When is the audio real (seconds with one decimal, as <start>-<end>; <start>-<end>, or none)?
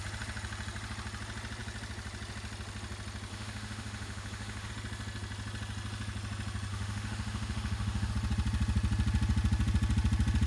0.0-3.3; 4.7-6.7; 8.1-10.5